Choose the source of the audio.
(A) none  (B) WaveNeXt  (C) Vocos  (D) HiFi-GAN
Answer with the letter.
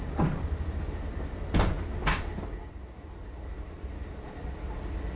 A